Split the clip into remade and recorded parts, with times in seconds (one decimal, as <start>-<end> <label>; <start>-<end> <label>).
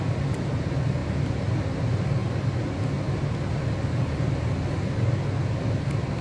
0.0-6.2 recorded